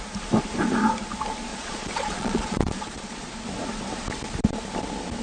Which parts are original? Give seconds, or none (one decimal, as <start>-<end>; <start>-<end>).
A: 0.0-1.5; 3.4-5.2